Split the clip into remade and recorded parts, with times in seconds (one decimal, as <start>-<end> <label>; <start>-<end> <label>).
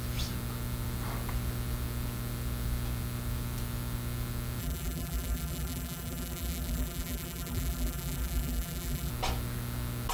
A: 0.0-4.6 recorded; 4.6-9.1 remade; 9.1-10.1 recorded